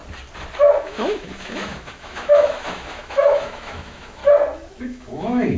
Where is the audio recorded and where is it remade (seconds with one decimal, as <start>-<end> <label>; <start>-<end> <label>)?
0.0-0.8 recorded; 0.8-4.2 remade; 4.2-4.8 recorded; 4.8-5.6 remade

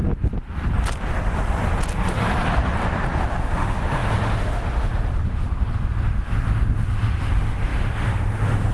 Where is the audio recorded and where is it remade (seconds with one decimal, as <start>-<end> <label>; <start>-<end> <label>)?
0.0-3.4 recorded; 3.4-8.7 remade

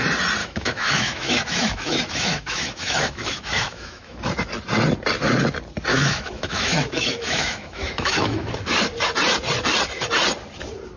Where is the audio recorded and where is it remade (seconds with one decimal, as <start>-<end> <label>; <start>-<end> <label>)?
0.0-0.4 recorded; 0.4-4.2 remade; 4.2-5.9 recorded; 5.9-8.5 remade; 8.5-11.0 recorded